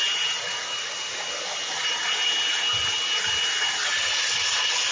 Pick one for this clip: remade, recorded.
recorded